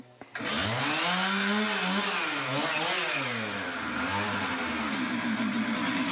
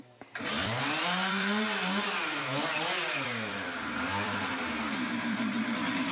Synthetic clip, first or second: second